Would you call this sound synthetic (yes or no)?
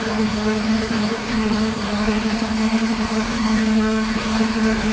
yes